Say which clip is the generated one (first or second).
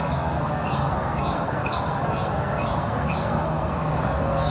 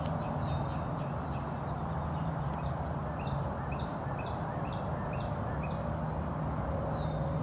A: first